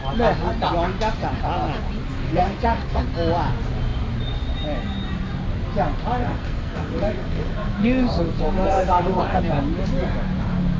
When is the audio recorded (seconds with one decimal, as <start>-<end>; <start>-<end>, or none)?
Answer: 0.0-2.0; 3.0-6.2; 9.4-10.8